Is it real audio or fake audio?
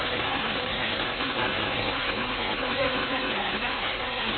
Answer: fake